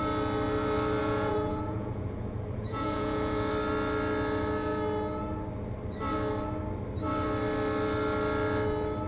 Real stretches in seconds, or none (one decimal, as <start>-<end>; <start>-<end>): 0.0-1.0; 3.5-9.1